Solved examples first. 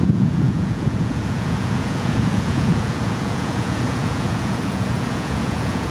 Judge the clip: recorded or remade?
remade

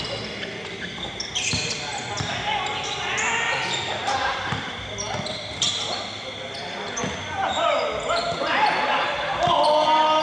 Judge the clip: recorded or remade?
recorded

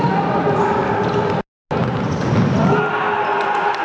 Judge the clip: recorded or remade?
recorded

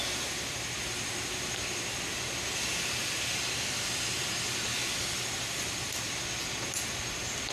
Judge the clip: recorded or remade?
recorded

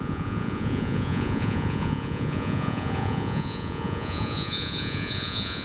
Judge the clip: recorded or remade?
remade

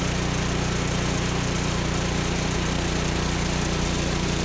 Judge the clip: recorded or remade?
recorded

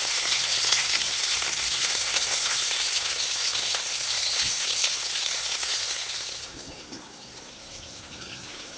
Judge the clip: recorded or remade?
remade